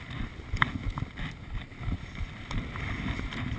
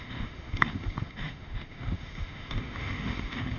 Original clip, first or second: first